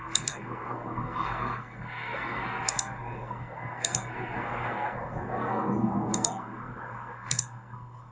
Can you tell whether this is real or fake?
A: fake